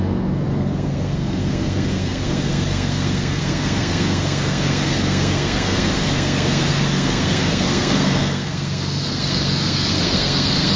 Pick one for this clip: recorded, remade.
remade